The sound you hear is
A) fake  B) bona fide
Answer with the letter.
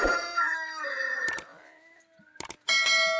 B